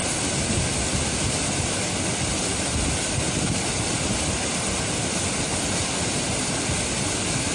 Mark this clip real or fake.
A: real